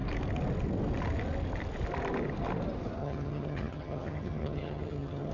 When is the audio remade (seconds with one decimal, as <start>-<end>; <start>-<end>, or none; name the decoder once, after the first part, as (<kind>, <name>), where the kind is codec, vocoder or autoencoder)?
3.0-5.3 (vocoder, HiFi-GAN)